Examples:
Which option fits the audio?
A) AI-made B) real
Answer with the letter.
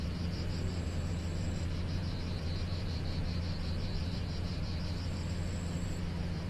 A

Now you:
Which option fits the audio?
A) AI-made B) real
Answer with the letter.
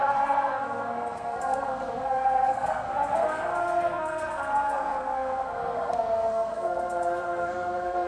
A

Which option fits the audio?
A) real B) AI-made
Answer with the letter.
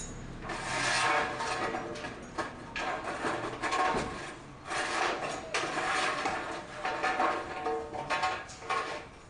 A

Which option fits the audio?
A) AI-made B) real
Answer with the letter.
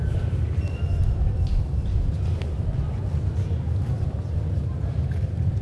B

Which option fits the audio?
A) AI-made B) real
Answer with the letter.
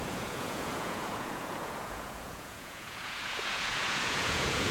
A